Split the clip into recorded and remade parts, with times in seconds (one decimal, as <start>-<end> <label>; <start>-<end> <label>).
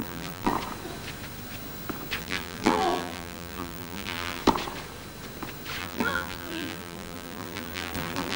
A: 0.0-0.5 remade; 0.5-2.2 recorded; 2.2-4.4 remade; 4.4-5.8 recorded; 5.8-8.4 remade